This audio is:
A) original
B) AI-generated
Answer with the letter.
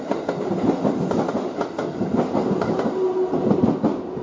A